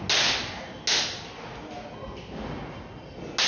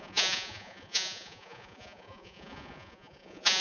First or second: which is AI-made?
second